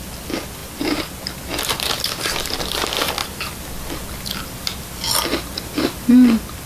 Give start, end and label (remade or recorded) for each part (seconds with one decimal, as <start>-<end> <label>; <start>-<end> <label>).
0.0-6.7 recorded